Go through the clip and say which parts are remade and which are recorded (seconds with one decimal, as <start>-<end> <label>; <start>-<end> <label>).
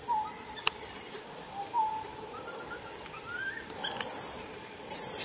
0.0-5.2 recorded